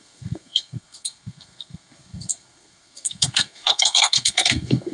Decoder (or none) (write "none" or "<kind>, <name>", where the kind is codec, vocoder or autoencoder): codec, SNAC